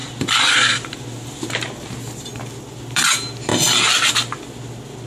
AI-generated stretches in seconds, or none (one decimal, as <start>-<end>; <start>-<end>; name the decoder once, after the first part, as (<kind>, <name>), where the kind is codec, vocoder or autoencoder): 0.0-3.0 (vocoder, BigVGAN v2)